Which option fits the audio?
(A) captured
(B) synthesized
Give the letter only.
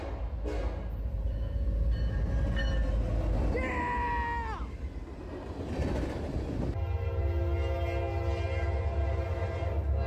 A